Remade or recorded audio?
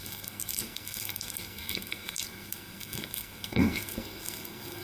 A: remade